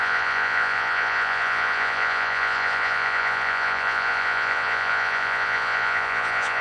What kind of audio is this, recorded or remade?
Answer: remade